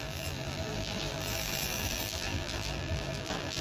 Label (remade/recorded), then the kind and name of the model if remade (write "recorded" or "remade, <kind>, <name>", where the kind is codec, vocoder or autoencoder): remade, vocoder, BigVGAN v2